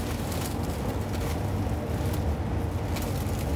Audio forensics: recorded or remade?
recorded